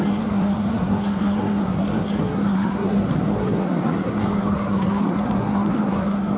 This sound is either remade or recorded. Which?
remade